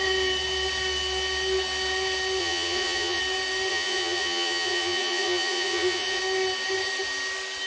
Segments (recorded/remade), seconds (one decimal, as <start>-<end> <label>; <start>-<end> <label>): 0.0-2.4 recorded; 2.4-3.2 remade; 3.2-3.7 recorded; 3.7-6.2 remade; 6.2-7.7 recorded